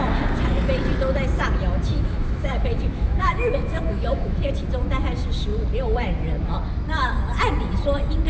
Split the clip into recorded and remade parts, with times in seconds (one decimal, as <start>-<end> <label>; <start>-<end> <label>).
0.0-1.9 recorded; 1.9-4.5 remade; 4.5-8.3 recorded